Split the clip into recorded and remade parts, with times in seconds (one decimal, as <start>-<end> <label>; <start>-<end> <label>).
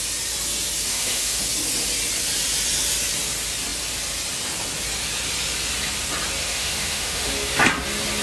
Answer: 0.0-0.9 recorded; 0.9-1.4 remade; 1.4-6.4 recorded; 6.4-7.3 remade; 7.3-8.2 recorded